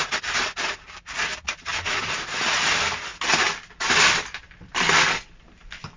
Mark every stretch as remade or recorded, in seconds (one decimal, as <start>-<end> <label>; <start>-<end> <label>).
0.0-3.1 remade; 3.1-4.1 recorded; 4.1-6.0 remade